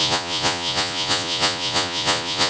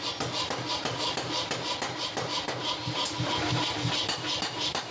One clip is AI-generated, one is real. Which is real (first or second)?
second